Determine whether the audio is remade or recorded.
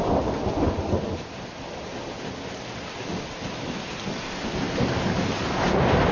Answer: recorded